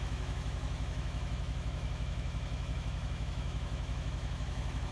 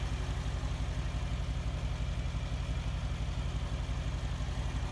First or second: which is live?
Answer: second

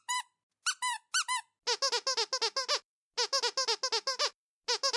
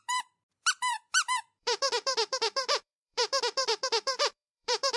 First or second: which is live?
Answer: first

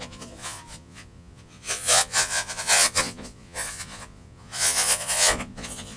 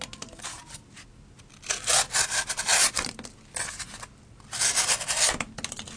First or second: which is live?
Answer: second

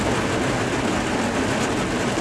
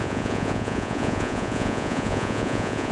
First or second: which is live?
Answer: first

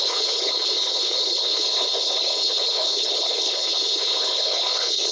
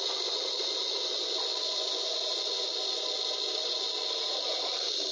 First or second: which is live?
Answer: second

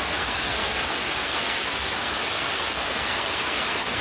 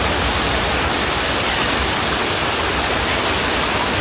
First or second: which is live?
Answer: second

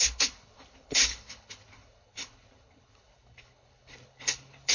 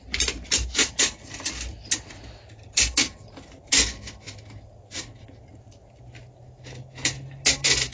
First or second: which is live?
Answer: second